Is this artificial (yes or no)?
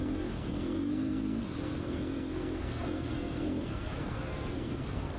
yes